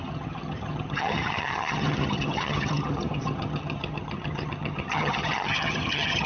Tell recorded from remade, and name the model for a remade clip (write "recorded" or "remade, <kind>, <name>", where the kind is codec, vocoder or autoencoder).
remade, vocoder, HiFi-GAN